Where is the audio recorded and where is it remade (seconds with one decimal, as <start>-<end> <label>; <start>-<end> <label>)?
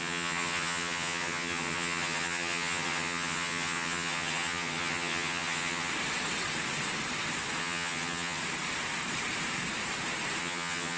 0.0-5.9 remade; 5.9-7.6 recorded; 7.6-8.4 remade; 8.4-10.4 recorded; 10.4-11.0 remade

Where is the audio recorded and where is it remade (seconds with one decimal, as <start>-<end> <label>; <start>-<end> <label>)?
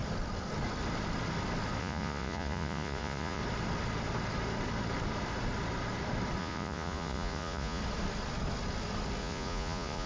0.0-1.8 recorded; 1.8-3.4 remade; 3.4-6.4 recorded; 6.4-7.8 remade; 7.8-9.2 recorded; 9.2-10.1 remade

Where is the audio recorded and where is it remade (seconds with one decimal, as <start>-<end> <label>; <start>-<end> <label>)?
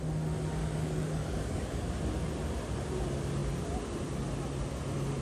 0.0-0.6 recorded; 0.6-2.0 remade; 2.0-5.2 recorded